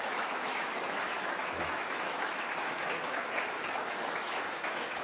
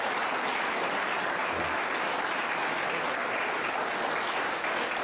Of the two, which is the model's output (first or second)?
first